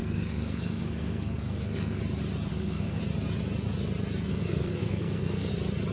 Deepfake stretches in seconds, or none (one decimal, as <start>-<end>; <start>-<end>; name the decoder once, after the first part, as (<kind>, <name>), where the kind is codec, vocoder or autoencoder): 0.0-2.0 (codec, SNAC); 2.5-3.0; 4.3-5.5